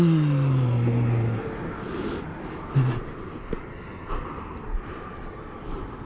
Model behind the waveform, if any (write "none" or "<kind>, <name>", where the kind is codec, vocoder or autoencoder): none